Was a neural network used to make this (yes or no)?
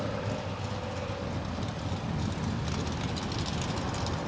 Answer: no